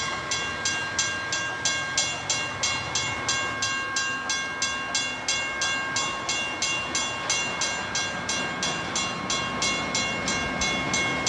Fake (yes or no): no